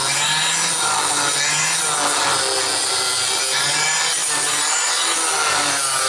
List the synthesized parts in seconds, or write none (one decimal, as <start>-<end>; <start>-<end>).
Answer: none